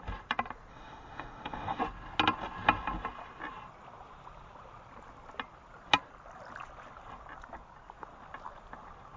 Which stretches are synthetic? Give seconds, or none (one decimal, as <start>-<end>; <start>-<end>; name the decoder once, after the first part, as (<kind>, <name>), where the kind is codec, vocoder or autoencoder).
0.7-1.8 (autoencoder, DAC-VAE)